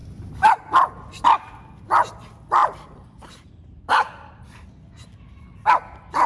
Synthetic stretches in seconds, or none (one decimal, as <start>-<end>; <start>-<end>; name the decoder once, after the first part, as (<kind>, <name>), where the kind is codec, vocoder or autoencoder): 2.6-4.7 (vocoder, BigVGAN v2)